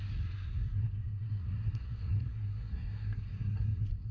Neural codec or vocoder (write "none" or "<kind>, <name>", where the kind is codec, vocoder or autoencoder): codec, SNAC